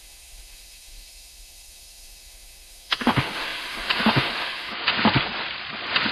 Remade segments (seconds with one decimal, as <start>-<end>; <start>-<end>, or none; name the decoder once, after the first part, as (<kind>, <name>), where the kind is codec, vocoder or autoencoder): 0.0-4.9 (autoencoder, DAC-VAE)